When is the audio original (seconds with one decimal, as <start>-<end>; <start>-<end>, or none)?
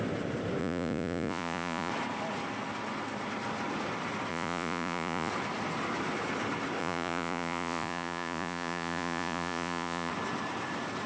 0.0-0.6; 1.9-4.3; 5.3-6.8; 10.1-11.1